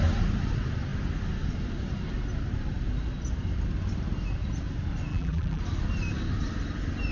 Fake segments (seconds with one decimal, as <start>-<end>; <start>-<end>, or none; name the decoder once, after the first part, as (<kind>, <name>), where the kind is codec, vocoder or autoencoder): 5.1-5.6 (vocoder, BigVGAN v2)